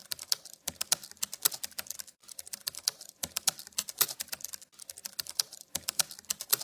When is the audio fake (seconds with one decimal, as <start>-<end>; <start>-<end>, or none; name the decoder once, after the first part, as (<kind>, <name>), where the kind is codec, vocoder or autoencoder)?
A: 2.2-4.3 (vocoder, BigVGAN v2); 5.0-6.6